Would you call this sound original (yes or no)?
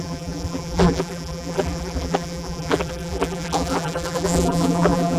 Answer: no